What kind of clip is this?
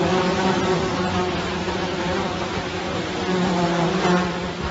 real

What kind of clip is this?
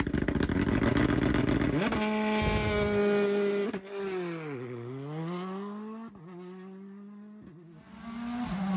real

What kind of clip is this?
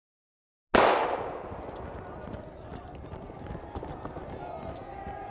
real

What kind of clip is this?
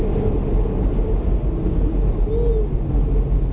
real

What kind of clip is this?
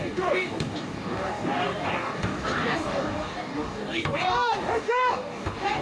fake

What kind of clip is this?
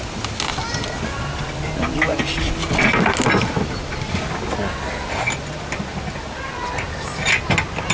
real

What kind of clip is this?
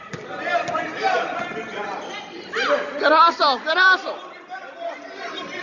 real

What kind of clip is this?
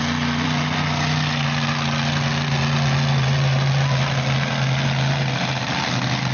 real